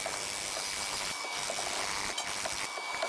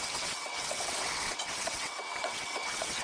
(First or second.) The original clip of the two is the first